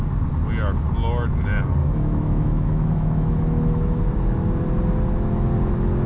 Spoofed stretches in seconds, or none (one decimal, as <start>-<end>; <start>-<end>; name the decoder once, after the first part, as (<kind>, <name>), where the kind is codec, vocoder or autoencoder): 1.8-4.0 (autoencoder, DAC-VAE)